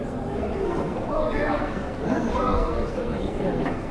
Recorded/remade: remade